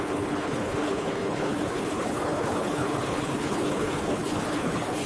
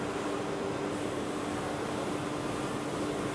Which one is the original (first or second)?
second